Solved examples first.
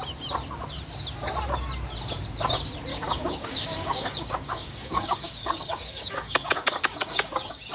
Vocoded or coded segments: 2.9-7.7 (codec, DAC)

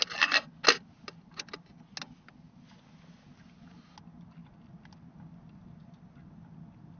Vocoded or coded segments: none

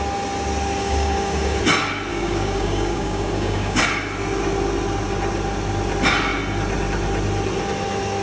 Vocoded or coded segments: 0.8-1.6 (codec, DAC); 2.1-3.8